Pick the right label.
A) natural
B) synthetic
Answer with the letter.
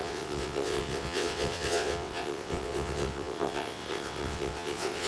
B